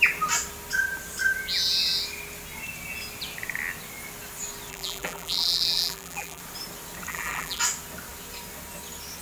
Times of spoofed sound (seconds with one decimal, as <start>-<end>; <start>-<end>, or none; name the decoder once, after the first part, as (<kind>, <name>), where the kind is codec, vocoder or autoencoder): 4.7-6.4 (vocoder, BigVGAN v2); 7.1-7.6